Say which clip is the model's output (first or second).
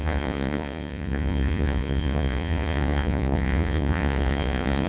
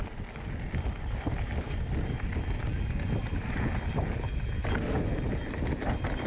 first